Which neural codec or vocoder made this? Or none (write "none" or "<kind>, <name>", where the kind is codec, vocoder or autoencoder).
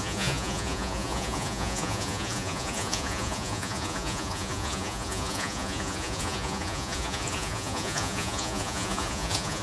vocoder, Vocos